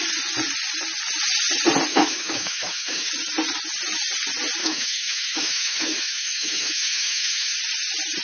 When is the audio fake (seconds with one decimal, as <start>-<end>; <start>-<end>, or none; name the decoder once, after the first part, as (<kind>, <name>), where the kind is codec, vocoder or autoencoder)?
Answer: 1.9-3.1 (autoencoder, DAC-VAE); 4.6-7.6